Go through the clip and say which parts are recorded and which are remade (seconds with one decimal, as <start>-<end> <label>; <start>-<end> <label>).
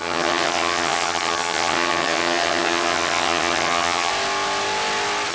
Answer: 0.0-4.1 remade; 4.1-5.3 recorded